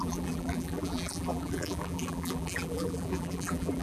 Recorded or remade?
remade